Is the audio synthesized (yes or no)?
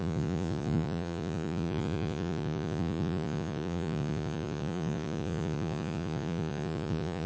yes